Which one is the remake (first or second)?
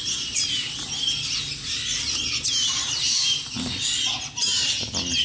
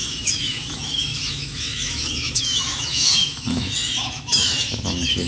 second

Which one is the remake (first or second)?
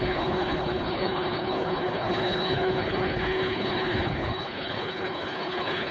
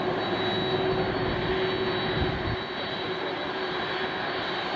first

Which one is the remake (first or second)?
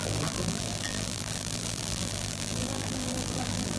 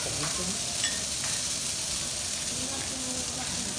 first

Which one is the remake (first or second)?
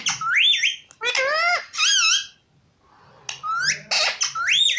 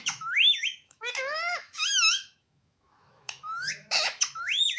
second